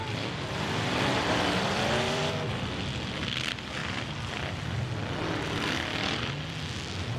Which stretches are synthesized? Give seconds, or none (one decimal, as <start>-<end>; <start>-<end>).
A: 0.0-2.3